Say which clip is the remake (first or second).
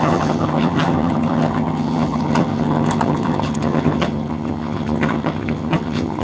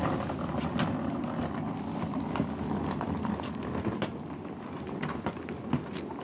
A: first